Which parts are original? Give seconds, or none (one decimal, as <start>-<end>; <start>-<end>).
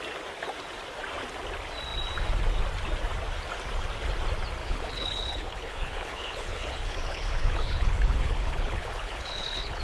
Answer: 0.0-4.6